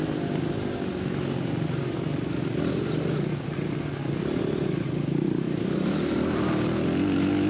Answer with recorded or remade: recorded